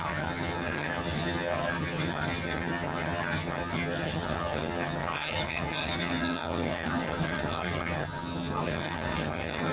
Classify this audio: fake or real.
fake